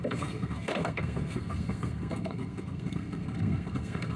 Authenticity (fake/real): fake